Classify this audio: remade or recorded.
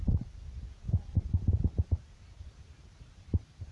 remade